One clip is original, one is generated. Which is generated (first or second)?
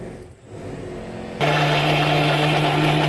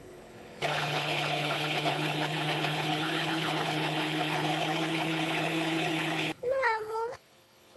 second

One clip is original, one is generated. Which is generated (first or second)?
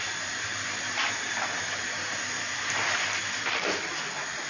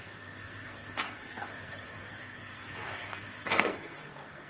second